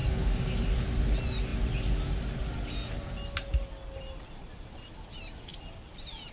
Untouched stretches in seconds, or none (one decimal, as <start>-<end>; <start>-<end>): 0.5-6.3